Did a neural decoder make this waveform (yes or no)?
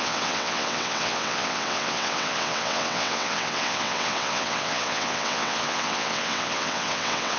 yes